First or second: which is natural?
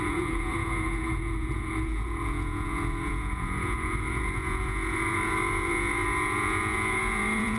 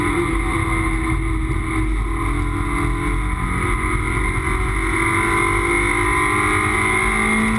second